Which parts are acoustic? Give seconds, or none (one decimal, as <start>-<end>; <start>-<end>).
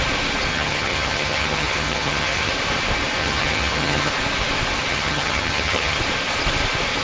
0.0-0.5; 2.5-3.2; 4.1-4.9; 6.0-7.0